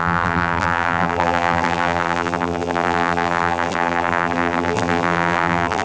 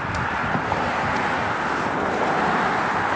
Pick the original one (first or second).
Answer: second